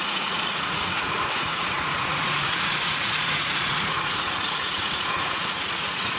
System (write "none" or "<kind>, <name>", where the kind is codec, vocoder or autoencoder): vocoder, Vocos